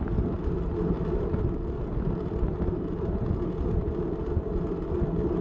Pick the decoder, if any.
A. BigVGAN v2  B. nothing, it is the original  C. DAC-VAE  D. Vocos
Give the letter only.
B